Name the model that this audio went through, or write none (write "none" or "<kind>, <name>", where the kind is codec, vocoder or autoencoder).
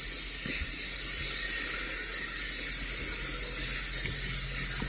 none